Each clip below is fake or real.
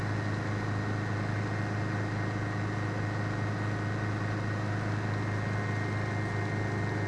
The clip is real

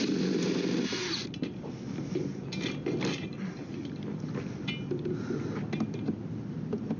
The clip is real